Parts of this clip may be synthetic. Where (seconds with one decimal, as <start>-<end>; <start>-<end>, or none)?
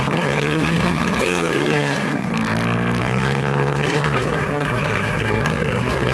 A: 0.0-2.3; 3.0-6.1